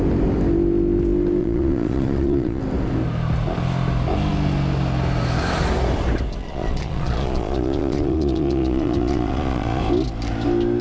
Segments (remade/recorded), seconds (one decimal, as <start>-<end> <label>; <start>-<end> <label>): 0.0-1.4 recorded; 1.4-2.6 remade; 2.6-6.4 recorded; 6.4-9.8 remade; 9.8-10.8 recorded